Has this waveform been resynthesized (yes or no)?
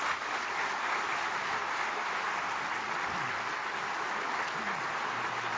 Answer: no